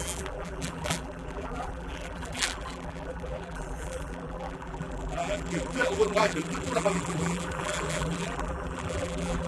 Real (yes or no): no